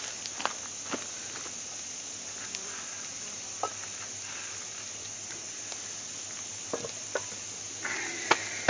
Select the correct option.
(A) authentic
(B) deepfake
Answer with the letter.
A